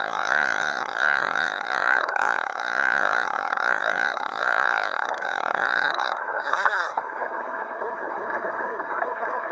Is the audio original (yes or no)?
no